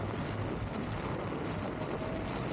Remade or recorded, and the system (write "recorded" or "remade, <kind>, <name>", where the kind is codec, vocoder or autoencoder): recorded